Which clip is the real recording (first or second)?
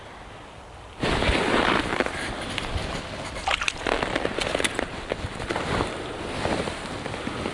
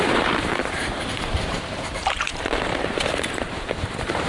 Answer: first